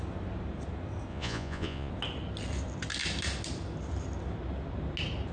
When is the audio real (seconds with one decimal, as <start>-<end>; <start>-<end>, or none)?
0.0-1.1; 1.9-5.3